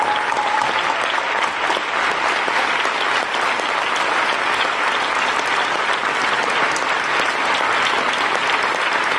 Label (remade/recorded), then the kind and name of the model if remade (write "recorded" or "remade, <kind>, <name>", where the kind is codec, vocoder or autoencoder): recorded